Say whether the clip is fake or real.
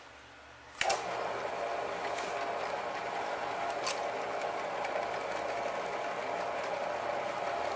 real